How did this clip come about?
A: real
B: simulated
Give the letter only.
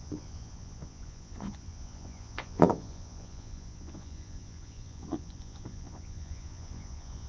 B